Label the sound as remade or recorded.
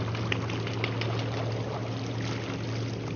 recorded